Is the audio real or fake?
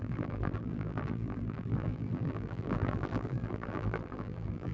fake